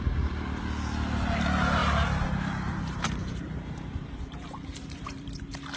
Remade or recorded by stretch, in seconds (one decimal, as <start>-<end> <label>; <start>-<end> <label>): 0.0-1.8 recorded; 1.8-5.3 remade; 5.3-5.8 recorded